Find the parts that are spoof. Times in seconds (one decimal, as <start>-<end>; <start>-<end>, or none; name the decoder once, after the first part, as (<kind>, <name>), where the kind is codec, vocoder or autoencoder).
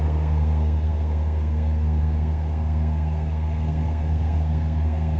0.0-5.2 (codec, SNAC)